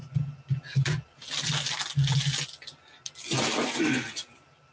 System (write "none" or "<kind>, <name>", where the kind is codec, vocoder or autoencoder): none